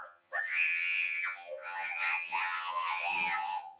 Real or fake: fake